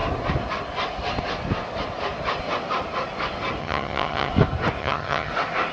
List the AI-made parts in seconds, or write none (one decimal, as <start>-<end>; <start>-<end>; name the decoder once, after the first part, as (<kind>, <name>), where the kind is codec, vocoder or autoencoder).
3.6-4.3 (vocoder, HiFi-GAN); 4.8-5.3